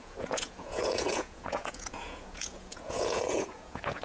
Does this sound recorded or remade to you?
remade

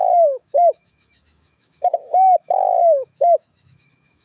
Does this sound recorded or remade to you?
remade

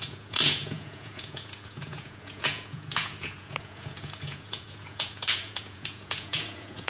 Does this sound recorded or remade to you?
remade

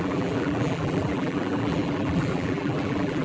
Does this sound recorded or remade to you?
remade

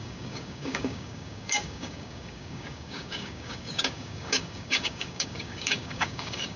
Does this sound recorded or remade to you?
remade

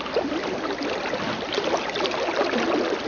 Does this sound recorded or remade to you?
recorded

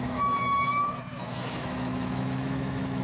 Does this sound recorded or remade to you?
remade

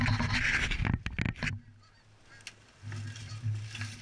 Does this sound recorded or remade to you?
recorded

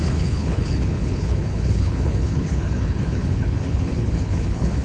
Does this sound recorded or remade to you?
remade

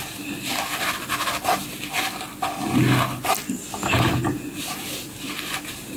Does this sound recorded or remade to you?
recorded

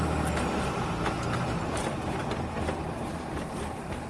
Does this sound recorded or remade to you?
recorded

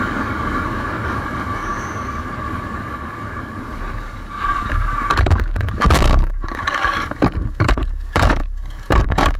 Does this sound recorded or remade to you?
remade